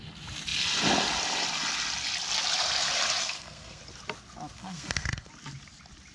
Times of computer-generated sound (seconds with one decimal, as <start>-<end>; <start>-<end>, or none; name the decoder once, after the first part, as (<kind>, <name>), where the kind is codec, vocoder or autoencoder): 3.2-3.8 (codec, SNAC); 4.6-5.3